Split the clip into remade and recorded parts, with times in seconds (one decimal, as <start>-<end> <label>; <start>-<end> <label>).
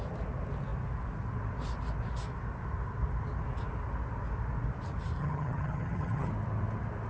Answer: 0.0-5.2 recorded; 5.2-6.3 remade; 6.3-7.1 recorded